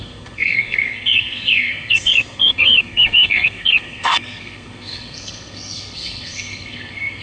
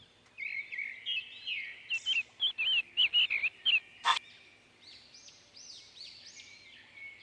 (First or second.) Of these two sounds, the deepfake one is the first